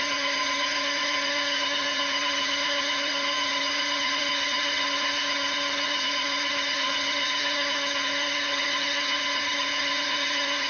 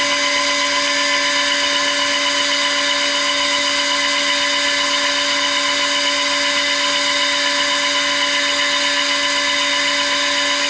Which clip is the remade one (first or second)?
first